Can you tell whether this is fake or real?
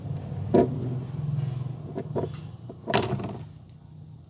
real